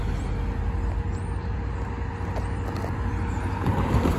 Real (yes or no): yes